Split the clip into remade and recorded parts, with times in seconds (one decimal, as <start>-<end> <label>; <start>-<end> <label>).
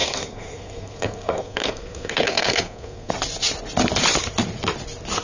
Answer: 0.0-3.1 remade; 3.1-5.2 recorded